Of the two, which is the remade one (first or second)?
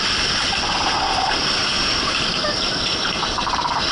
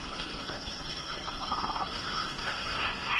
second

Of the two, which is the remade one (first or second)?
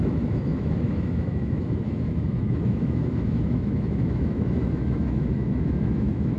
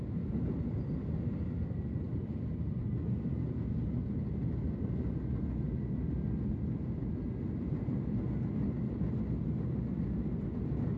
first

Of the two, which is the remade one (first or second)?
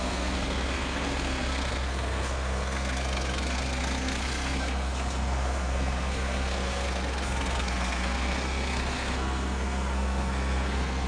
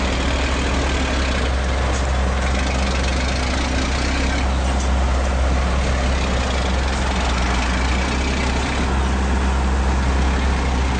first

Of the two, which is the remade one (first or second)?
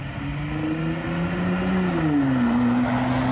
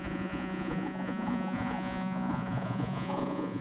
second